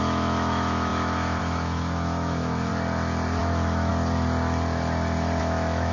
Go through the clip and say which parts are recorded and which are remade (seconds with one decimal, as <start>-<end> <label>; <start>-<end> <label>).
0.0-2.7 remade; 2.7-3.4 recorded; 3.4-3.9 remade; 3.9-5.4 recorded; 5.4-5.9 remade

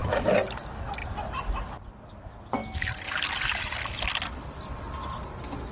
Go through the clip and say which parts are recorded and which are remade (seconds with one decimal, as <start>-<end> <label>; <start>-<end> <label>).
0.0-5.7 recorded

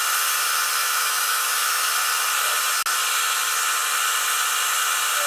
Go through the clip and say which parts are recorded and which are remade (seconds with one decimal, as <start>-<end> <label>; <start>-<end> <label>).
0.0-0.8 recorded; 0.8-1.9 remade; 1.9-5.3 recorded

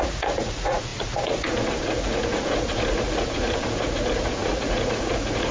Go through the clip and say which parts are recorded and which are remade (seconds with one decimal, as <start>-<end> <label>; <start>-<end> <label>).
0.0-5.5 remade